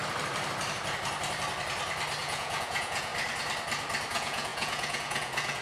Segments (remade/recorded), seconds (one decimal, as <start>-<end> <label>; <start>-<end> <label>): 0.0-2.2 recorded; 2.2-3.1 remade; 3.1-4.1 recorded; 4.1-5.6 remade